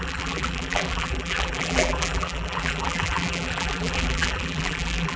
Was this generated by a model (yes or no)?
yes